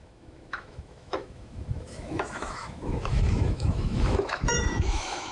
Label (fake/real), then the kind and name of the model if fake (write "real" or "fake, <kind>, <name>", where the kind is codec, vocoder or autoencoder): fake, autoencoder, DAC-VAE